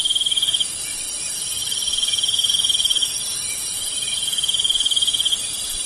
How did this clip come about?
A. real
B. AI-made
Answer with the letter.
B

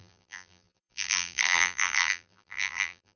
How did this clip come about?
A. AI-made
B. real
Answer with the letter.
A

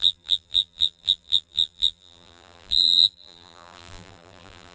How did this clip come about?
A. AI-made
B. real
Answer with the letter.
A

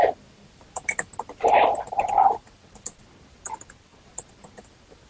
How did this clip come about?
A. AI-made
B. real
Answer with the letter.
A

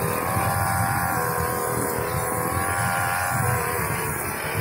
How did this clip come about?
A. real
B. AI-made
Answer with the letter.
A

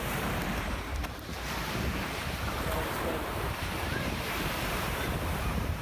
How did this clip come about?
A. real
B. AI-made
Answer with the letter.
B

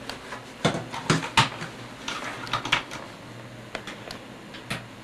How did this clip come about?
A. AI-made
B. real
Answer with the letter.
B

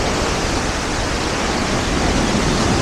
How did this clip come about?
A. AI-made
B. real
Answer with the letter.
B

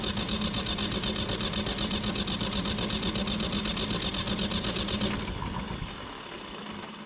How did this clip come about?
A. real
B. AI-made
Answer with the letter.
A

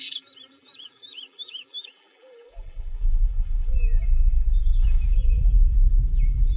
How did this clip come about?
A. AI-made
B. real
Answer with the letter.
A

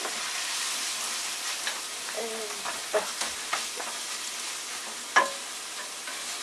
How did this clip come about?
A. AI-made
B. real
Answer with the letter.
B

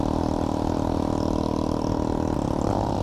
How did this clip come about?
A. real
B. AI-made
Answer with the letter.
B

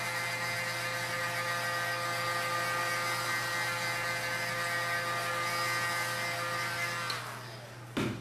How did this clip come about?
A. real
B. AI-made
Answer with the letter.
A